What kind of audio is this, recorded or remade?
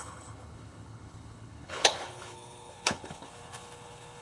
remade